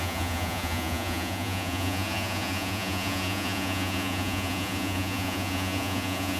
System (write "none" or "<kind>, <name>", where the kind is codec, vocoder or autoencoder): vocoder, Vocos